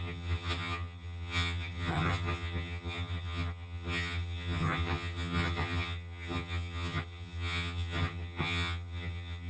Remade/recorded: remade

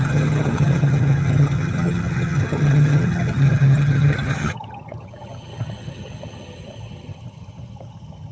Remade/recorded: remade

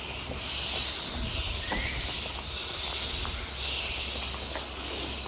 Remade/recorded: recorded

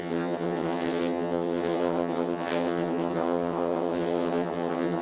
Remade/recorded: remade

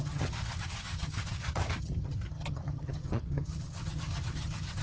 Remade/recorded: remade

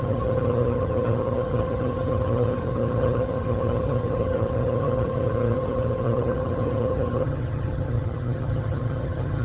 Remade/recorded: remade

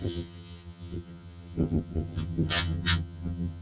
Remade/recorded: remade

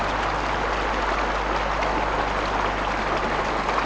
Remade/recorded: recorded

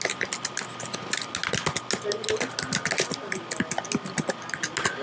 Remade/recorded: recorded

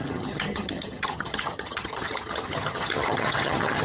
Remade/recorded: remade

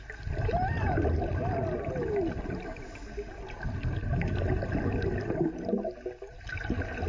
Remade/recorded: recorded